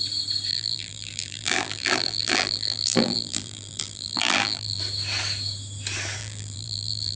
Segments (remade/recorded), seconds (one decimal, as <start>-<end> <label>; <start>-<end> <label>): 0.0-0.5 recorded; 0.5-4.8 remade; 4.8-6.2 recorded; 6.2-7.2 remade